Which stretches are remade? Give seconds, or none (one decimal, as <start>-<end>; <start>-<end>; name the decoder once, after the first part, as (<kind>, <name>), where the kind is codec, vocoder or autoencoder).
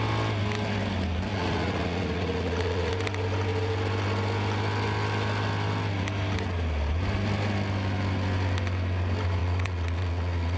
1.3-2.9 (vocoder, Vocos); 9.4-10.6